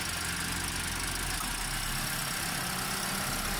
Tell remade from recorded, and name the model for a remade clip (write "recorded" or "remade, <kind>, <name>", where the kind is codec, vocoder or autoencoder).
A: recorded